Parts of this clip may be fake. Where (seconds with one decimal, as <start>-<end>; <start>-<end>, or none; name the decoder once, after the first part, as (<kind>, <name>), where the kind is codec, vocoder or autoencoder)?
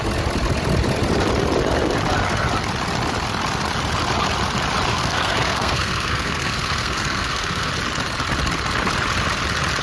4.9-7.7 (codec, SNAC)